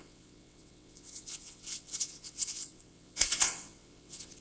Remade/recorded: remade